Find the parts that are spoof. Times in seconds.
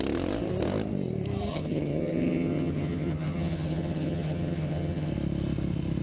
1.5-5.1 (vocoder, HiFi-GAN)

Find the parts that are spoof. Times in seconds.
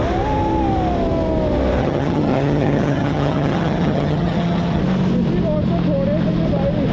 1.8-4.8 (vocoder, HiFi-GAN)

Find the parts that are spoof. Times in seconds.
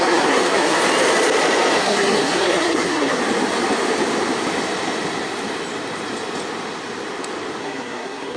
0.0-0.8 (codec, SNAC); 1.8-3.2; 7.6-8.4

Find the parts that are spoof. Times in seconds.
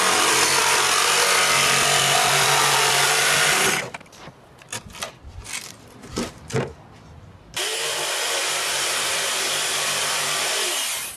0.0-0.6 (vocoder, BigVGAN v2); 4.3-11.2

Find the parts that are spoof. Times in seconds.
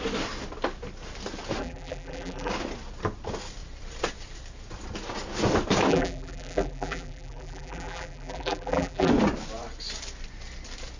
1.6-2.5 (vocoder, BigVGAN v2); 5.9-9.1